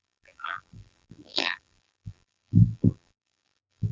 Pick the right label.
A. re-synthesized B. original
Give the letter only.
A